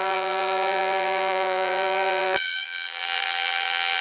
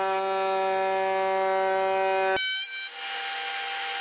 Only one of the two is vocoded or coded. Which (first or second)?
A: first